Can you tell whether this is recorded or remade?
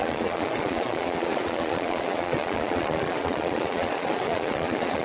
remade